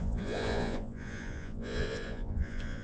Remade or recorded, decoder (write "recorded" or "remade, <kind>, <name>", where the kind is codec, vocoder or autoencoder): remade, vocoder, Vocos